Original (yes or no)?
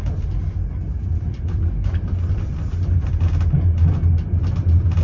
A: yes